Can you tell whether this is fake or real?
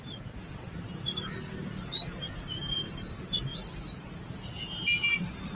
real